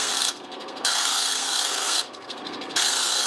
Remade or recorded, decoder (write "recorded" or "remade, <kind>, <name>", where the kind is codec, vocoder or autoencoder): remade, codec, SNAC